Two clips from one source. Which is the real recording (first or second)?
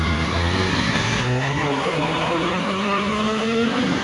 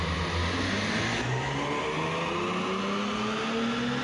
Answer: second